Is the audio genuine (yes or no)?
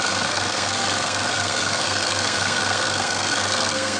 no